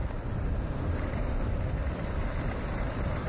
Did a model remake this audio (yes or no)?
yes